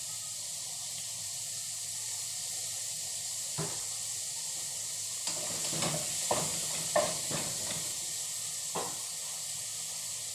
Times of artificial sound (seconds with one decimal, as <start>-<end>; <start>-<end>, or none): 0.0-3.4; 6.5-7.8